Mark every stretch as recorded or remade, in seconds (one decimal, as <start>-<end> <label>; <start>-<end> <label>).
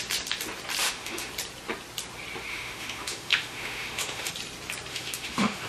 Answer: 0.0-0.8 recorded; 0.8-1.3 remade; 1.3-2.5 recorded; 2.5-4.3 remade; 4.3-4.9 recorded; 4.9-5.7 remade